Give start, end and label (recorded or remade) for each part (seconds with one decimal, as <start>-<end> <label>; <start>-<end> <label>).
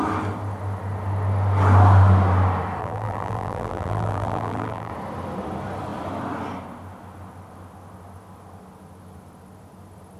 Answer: 0.0-2.8 recorded; 2.8-4.9 remade; 4.9-10.2 recorded